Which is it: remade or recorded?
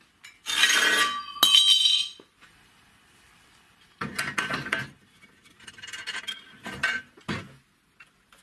recorded